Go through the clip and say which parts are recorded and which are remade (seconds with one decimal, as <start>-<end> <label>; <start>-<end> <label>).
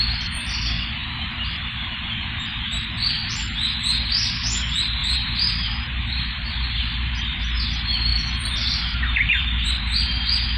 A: 0.0-1.0 recorded; 1.0-3.8 remade; 3.8-5.0 recorded; 5.0-7.4 remade; 7.4-8.1 recorded; 8.1-9.8 remade; 9.8-10.6 recorded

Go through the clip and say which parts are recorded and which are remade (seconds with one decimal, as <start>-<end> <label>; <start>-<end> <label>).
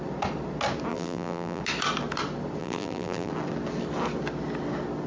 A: 0.0-0.9 recorded; 0.9-1.6 remade; 1.6-2.6 recorded; 2.6-3.3 remade; 3.3-5.1 recorded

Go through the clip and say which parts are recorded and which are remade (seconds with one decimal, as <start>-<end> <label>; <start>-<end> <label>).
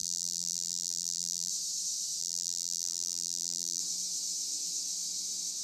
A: 0.0-1.5 remade; 1.5-2.2 recorded; 2.2-3.8 remade; 3.8-5.6 recorded